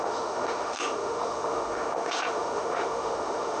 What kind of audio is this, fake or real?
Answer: fake